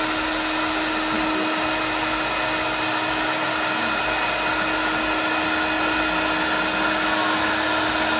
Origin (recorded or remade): recorded